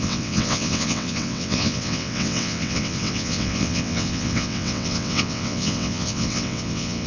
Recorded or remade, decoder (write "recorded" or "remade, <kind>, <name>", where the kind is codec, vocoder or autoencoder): remade, vocoder, WaveNeXt